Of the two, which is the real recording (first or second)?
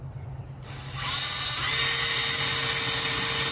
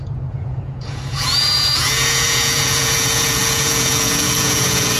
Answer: first